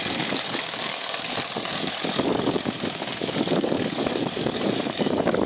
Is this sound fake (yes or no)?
yes